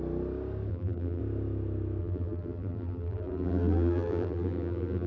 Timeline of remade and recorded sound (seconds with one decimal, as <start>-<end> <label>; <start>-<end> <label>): 0.0-0.7 recorded; 0.7-1.2 remade; 1.2-2.0 recorded; 2.0-5.1 remade